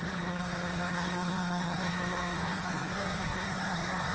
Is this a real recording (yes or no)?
no